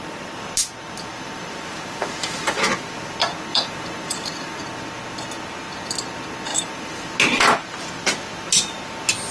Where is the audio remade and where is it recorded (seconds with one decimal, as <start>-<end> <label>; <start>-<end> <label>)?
0.0-1.1 recorded; 1.1-2.6 remade; 2.6-3.5 recorded; 3.5-4.6 remade; 4.6-6.5 recorded; 6.5-7.0 remade; 7.0-9.3 recorded

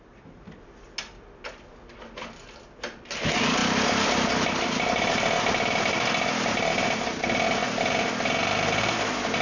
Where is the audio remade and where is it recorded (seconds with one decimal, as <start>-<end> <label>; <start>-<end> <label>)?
0.0-9.4 recorded

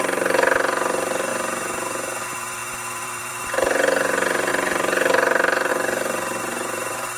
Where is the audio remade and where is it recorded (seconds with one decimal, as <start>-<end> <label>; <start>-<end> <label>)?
0.0-1.3 remade; 1.3-2.2 recorded; 2.2-7.2 remade

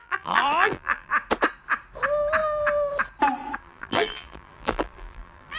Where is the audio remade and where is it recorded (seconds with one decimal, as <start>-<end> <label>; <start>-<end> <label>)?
0.0-1.1 remade; 1.1-3.6 recorded; 3.6-5.6 remade